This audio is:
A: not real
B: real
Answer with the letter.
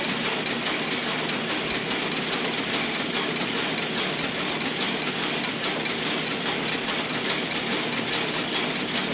B